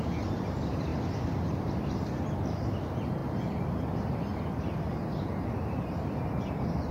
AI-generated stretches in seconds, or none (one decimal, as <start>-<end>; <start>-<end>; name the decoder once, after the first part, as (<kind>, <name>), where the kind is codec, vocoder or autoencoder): none